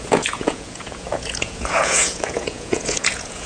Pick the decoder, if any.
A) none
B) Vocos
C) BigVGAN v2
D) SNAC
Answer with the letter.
B